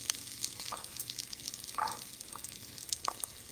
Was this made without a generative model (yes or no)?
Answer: no